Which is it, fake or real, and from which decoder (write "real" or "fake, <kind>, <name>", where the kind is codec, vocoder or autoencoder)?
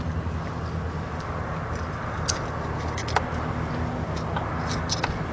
real